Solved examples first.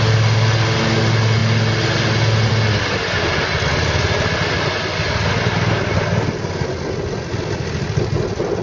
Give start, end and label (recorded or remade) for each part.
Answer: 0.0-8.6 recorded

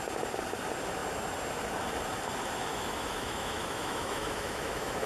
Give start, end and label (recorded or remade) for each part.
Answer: 0.0-2.7 recorded; 2.7-5.1 remade

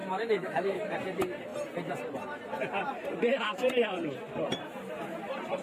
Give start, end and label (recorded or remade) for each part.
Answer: 0.0-0.9 remade; 0.9-5.6 recorded